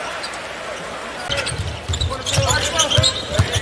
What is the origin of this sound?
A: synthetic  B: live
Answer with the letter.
B